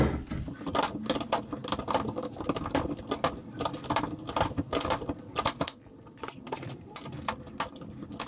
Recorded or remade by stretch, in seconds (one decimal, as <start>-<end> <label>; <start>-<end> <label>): 0.0-8.3 recorded